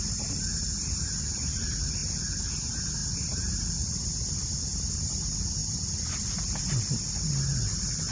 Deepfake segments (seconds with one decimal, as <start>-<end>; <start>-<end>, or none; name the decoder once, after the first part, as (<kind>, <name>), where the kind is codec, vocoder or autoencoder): none